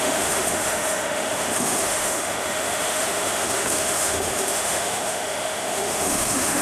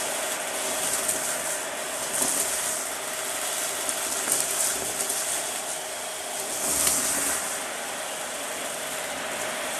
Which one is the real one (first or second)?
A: second